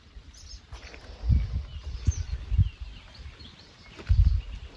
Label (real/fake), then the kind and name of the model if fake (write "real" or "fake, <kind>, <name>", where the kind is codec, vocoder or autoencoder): real